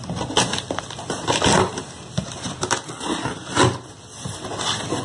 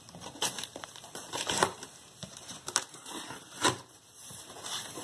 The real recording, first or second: first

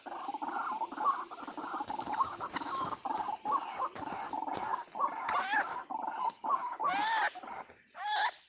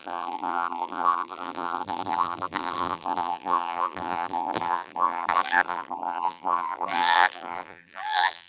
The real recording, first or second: first